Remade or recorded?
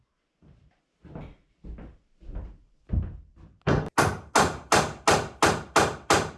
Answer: recorded